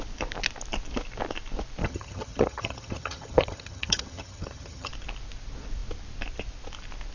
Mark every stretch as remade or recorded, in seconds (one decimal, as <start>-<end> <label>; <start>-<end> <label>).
0.0-1.8 recorded; 1.8-4.9 remade; 4.9-7.1 recorded